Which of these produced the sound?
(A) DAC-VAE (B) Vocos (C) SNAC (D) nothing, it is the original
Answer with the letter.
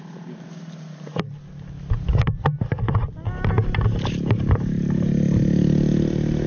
D